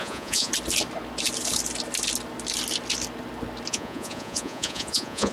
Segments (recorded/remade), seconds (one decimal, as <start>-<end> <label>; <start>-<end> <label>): 0.0-0.5 remade; 0.5-3.7 recorded; 3.7-5.3 remade